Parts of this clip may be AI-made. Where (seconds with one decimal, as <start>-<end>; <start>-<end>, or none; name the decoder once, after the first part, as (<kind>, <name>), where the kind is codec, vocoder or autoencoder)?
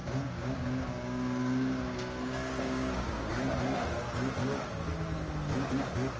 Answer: 0.0-3.3 (codec, DAC); 4.4-5.2